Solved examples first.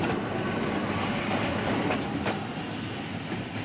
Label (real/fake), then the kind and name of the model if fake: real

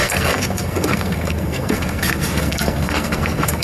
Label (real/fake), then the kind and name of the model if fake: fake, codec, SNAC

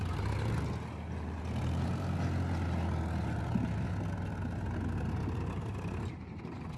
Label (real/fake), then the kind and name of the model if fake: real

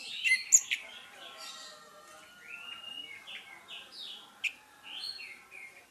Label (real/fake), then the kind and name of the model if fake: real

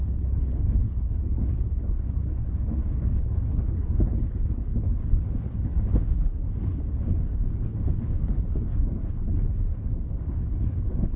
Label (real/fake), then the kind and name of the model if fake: fake, codec, HILCodec